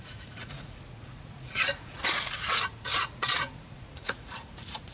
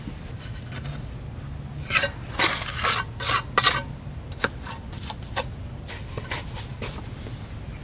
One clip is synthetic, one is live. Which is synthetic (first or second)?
first